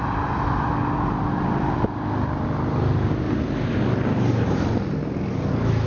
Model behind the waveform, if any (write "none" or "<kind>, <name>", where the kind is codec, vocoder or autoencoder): none